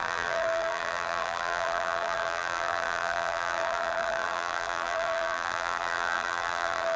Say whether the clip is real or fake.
fake